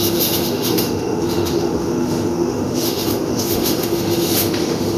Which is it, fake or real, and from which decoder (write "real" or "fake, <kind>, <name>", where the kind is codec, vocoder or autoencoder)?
fake, autoencoder, DAC-VAE